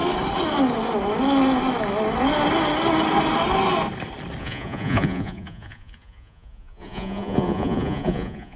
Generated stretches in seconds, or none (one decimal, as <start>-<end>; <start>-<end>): 4.4-8.6